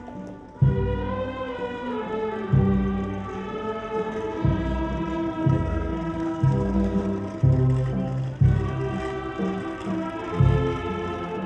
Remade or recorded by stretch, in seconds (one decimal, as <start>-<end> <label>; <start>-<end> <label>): 0.0-5.4 recorded; 5.4-7.0 remade; 7.0-11.5 recorded